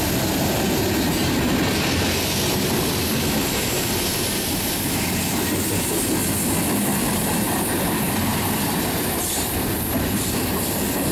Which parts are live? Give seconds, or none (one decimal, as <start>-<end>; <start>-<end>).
0.0-11.1

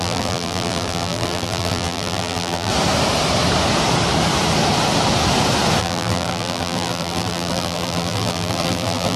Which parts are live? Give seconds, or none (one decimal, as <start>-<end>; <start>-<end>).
2.7-5.8

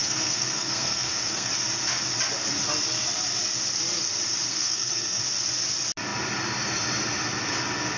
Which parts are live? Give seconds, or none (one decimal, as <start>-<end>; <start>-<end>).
1.5-4.5; 5.2-8.0